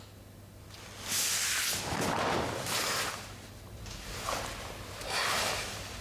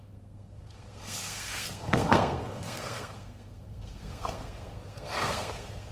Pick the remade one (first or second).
second